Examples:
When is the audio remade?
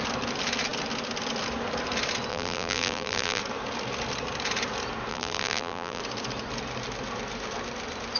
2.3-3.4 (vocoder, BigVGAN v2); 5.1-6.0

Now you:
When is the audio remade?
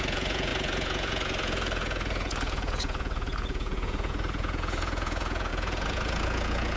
0.0-6.8 (vocoder, Vocos)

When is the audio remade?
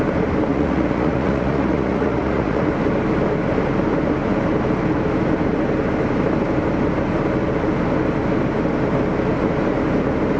0.5-2.7 (vocoder, Vocos)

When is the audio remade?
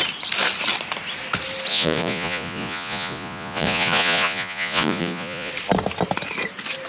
1.7-5.5 (vocoder, Vocos)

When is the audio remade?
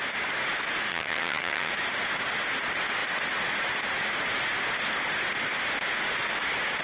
0.9-1.7 (vocoder, HiFi-GAN)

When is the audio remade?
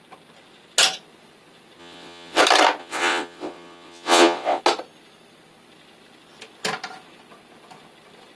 1.8-2.4 (vocoder, WaveNeXt); 2.8-4.6